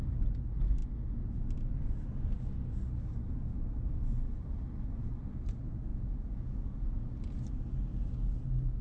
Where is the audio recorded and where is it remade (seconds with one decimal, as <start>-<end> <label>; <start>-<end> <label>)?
0.0-5.9 recorded; 5.9-7.1 remade; 7.1-8.8 recorded

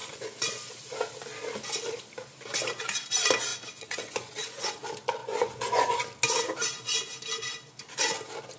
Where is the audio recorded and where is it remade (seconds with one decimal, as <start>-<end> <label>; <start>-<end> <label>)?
0.0-0.7 remade; 0.7-3.5 recorded; 3.5-4.7 remade; 4.7-5.2 recorded; 5.2-6.0 remade; 6.0-8.6 recorded

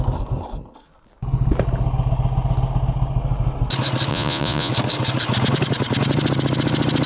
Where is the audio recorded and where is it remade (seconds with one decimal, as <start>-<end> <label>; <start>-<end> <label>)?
0.0-4.1 recorded; 4.1-4.7 remade; 4.7-7.1 recorded

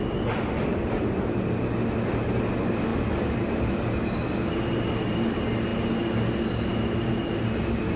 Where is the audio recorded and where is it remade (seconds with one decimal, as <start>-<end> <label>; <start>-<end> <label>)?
0.0-8.0 recorded

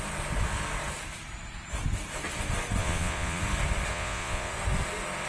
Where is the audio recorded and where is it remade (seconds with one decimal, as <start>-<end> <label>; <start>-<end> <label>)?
0.0-2.8 recorded; 2.8-3.4 remade; 3.4-3.9 recorded; 3.9-4.5 remade; 4.5-5.3 recorded